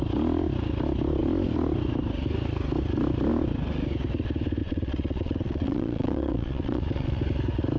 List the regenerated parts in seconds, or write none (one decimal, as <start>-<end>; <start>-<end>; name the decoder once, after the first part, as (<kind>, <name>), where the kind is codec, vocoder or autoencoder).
4.6-7.2 (vocoder, WaveNeXt)